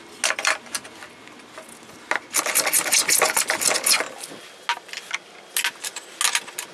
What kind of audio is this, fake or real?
real